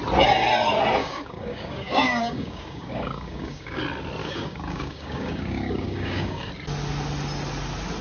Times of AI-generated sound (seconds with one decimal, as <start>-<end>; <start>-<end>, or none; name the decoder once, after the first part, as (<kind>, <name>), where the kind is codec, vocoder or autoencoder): 1.0-3.8 (codec, DAC); 4.2-6.5